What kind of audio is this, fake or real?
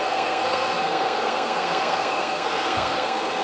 fake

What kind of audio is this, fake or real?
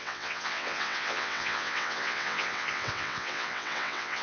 fake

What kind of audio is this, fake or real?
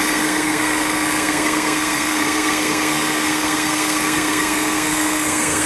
fake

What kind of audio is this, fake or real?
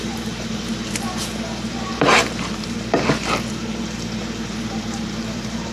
fake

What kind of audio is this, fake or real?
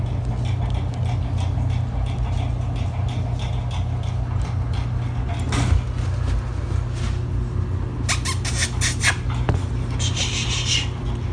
real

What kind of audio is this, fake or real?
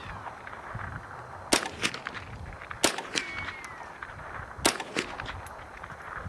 real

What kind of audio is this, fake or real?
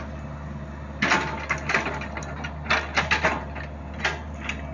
real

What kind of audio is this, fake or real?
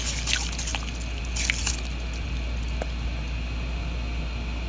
real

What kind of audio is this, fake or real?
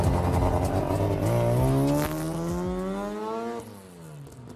real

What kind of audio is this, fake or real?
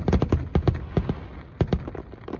real